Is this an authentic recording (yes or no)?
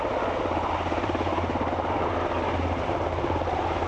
yes